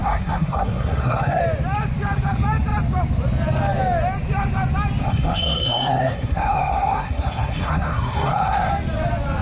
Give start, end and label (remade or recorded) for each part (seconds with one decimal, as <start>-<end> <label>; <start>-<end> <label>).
0.0-1.4 remade; 1.4-5.0 recorded; 5.0-8.7 remade; 8.7-9.4 recorded